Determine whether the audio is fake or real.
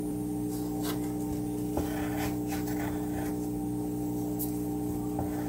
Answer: real